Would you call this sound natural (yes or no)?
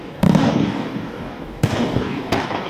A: no